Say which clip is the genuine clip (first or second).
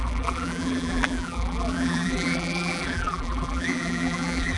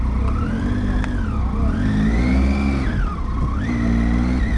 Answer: second